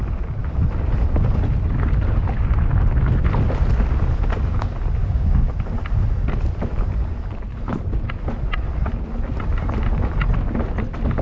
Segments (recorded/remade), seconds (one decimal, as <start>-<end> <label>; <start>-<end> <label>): 0.0-5.0 recorded; 5.0-5.5 remade; 5.5-11.2 recorded

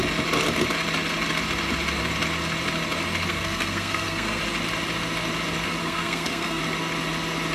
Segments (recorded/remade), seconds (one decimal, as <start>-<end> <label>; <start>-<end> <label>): 0.0-3.3 recorded; 3.3-4.4 remade; 4.4-5.8 recorded; 5.8-6.6 remade; 6.6-7.5 recorded